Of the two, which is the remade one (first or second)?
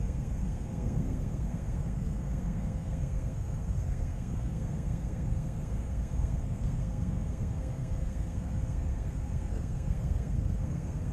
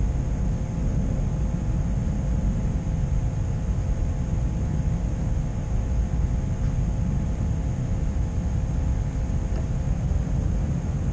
first